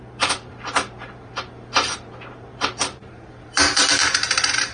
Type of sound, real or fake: fake